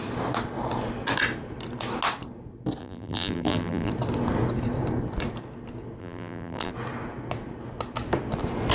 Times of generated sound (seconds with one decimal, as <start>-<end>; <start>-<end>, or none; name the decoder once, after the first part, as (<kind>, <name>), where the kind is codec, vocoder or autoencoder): 2.8-3.9 (vocoder, BigVGAN v2); 6.0-6.7